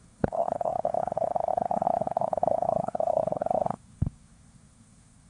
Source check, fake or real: fake